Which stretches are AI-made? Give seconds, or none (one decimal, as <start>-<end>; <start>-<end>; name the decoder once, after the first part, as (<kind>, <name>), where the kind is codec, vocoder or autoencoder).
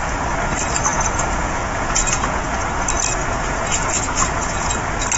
0.9-2.5 (vocoder, Vocos); 3.2-4.8